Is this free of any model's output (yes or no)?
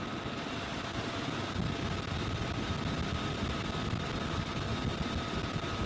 yes